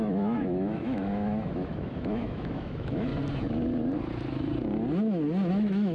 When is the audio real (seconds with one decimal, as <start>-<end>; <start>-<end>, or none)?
3.1-5.5